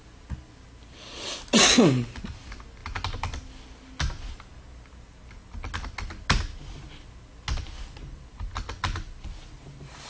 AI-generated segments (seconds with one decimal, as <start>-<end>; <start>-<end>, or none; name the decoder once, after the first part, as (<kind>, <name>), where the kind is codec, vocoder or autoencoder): none